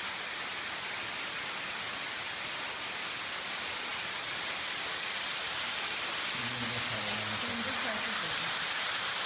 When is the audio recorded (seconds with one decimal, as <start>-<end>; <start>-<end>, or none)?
0.0-0.5; 1.0-3.9; 6.4-9.3